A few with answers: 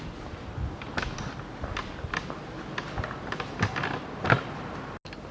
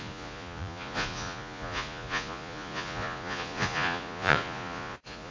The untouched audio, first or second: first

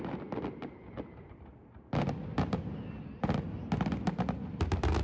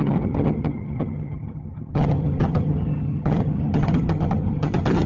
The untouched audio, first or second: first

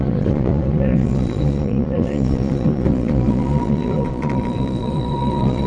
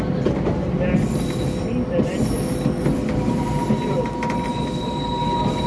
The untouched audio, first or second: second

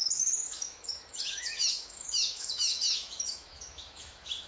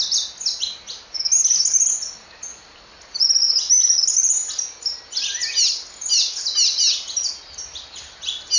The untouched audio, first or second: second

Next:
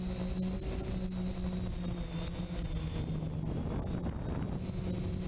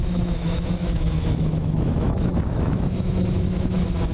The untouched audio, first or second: first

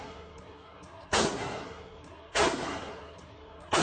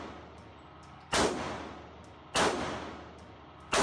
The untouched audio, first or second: second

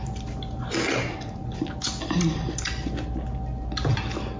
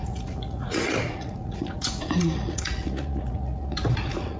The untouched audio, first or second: first